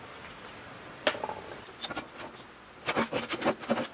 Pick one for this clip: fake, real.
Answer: real